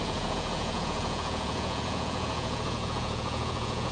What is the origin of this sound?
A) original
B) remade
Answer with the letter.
B